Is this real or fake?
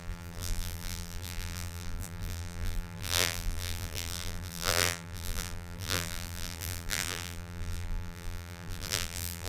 fake